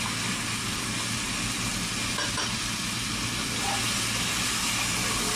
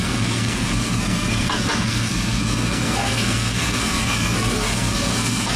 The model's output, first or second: second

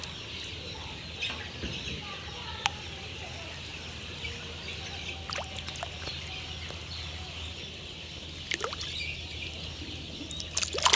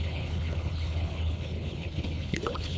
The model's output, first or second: second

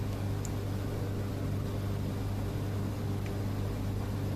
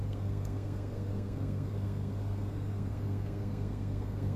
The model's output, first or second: second